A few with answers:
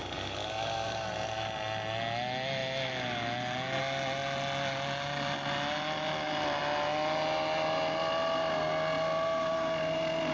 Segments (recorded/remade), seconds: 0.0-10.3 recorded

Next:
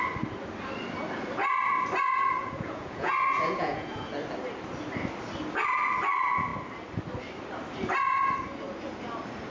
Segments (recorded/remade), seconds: 0.0-2.4 recorded; 2.4-4.1 remade; 4.1-9.5 recorded

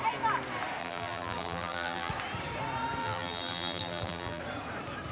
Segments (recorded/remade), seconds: 0.0-0.8 recorded; 0.8-2.1 remade; 2.1-3.0 recorded; 3.0-4.4 remade; 4.4-5.1 recorded

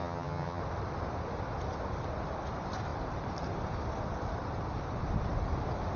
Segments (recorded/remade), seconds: 0.0-0.6 remade; 0.6-6.0 recorded

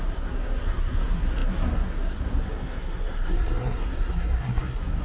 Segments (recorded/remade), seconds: 0.0-5.0 remade

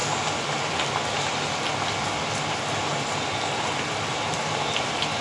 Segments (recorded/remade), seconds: 0.0-5.2 recorded

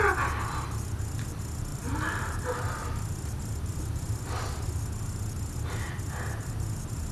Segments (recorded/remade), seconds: 0.0-1.7 recorded; 1.7-2.6 remade; 2.6-7.1 recorded

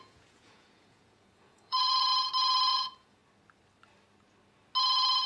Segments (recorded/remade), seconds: 0.0-2.1 remade; 2.1-2.7 recorded; 2.7-3.2 remade; 3.2-5.3 recorded